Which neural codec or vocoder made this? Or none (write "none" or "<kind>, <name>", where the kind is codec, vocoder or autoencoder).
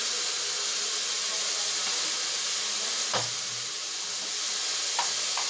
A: none